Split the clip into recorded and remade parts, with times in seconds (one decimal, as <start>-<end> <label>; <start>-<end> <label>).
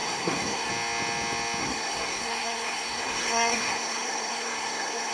0.0-0.7 remade; 0.7-1.6 recorded; 1.6-5.1 remade